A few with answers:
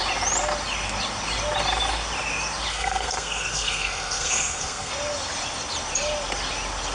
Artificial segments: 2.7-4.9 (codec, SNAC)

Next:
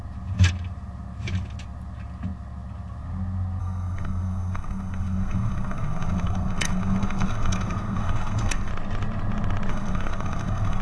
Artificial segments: 3.6-8.7 (codec, SNAC); 9.7-10.8

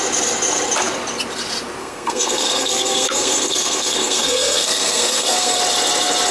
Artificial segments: 1.8-5.6 (codec, SNAC)